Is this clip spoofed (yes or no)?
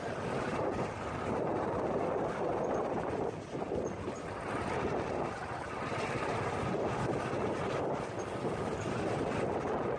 no